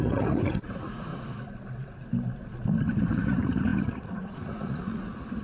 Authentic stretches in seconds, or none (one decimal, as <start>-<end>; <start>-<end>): 1.1-3.0